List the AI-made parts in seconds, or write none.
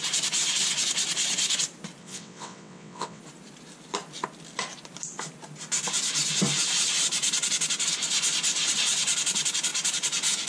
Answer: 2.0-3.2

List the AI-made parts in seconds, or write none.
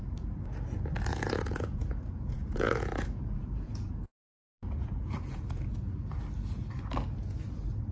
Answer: 1.1-3.9; 4.4-5.7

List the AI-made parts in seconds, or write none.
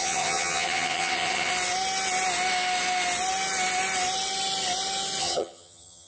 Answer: 0.0-1.5; 5.2-6.1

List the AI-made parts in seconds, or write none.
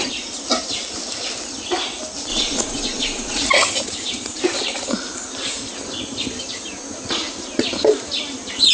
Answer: 2.3-3.5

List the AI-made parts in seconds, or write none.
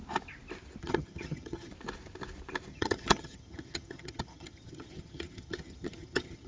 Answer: 0.8-1.7; 2.7-6.5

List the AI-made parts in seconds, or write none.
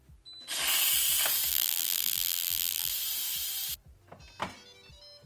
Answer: 1.5-2.9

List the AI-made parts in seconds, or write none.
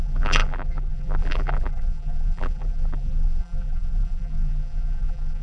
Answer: 0.0-5.4